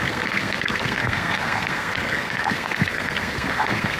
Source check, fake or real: fake